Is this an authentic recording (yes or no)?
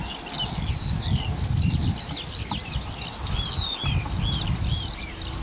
yes